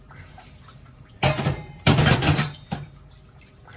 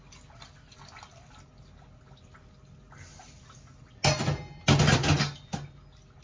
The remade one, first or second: first